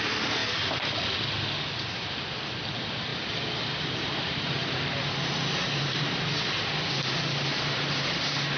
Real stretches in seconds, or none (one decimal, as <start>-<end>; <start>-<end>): 0.0-3.1; 6.0-7.5